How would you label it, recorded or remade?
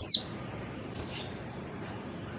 remade